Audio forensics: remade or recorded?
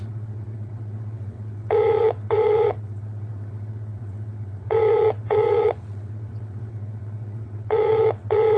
remade